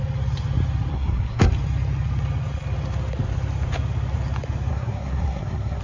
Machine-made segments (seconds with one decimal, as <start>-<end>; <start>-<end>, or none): 0.9-1.5; 4.7-5.8